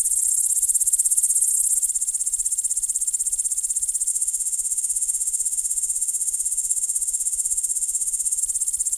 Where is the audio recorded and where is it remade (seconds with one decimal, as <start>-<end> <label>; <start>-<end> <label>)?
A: 0.0-4.1 recorded; 4.1-8.4 remade; 8.4-9.0 recorded